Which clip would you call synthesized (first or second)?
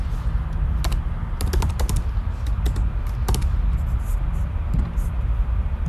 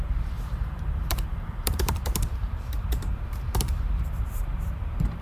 second